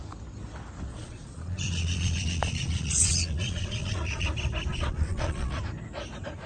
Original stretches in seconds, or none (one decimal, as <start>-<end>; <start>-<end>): 0.0-0.9; 4.3-4.7; 5.6-6.5